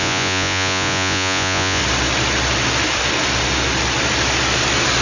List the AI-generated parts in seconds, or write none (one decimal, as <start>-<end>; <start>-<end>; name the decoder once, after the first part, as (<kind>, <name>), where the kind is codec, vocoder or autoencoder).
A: 0.0-1.8 (vocoder, Vocos)